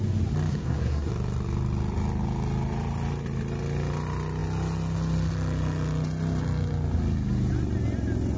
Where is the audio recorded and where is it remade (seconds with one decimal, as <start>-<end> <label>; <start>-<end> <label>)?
0.0-0.5 recorded; 0.5-1.1 remade; 1.1-8.4 recorded

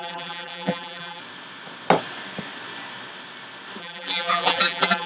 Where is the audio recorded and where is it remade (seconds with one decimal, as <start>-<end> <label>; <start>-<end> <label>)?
0.0-1.2 remade; 1.2-3.8 recorded; 3.8-5.1 remade

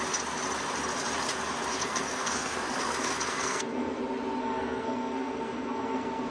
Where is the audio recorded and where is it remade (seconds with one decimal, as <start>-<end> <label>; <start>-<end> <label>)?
0.0-1.7 recorded; 1.7-4.0 remade; 4.0-4.4 recorded; 4.4-6.3 remade